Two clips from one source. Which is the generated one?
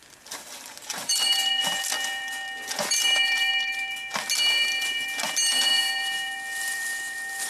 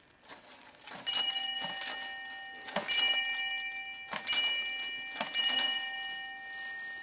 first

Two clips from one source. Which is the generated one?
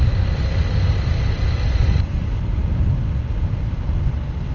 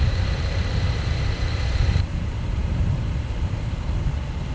second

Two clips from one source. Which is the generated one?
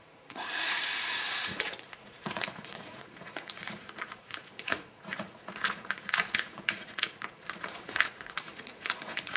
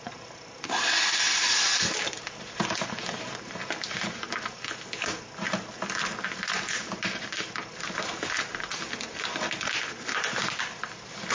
first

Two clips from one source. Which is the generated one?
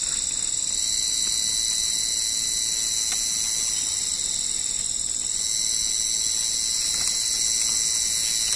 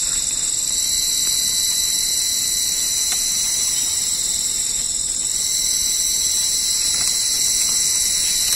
second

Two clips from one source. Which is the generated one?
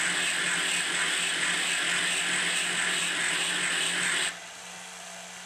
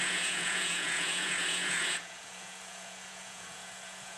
second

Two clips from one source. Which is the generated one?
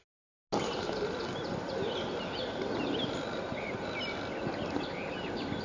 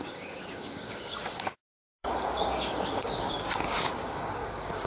second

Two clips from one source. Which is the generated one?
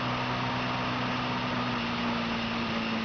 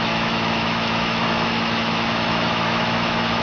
second